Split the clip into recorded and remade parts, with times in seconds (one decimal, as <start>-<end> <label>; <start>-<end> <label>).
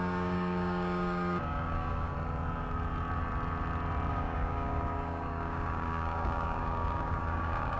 0.0-2.1 remade; 2.1-4.1 recorded; 4.1-7.8 remade